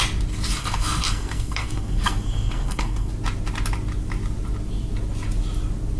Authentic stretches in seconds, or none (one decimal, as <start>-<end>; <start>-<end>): 0.0-0.6; 3.1-6.0